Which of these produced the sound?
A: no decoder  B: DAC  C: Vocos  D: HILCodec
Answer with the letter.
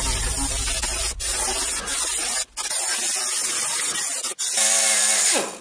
A